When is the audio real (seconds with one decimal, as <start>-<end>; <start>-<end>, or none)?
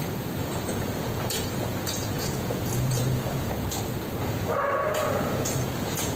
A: none